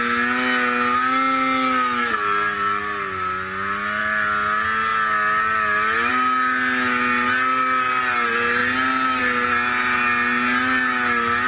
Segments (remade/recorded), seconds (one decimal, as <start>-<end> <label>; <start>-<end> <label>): 0.0-11.5 recorded